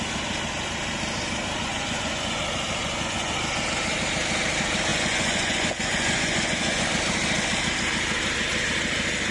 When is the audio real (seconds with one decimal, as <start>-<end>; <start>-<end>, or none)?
0.0-1.6; 2.4-2.8; 3.4-4.9; 6.9-9.3